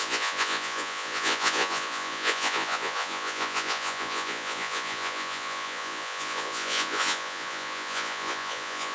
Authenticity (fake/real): fake